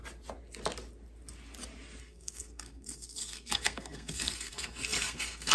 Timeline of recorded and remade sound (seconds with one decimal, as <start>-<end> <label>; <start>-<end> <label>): 0.0-2.0 recorded; 2.0-5.5 remade